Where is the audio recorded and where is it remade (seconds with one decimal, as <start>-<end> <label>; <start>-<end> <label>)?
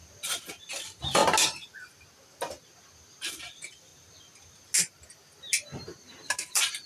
0.0-0.6 recorded; 0.6-1.2 remade; 1.2-3.3 recorded; 3.3-3.9 remade; 3.9-6.5 recorded; 6.5-6.9 remade